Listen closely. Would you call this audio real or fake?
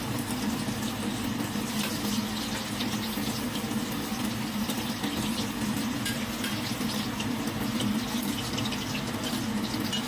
real